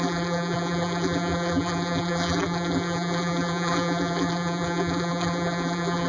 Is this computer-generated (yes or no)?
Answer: yes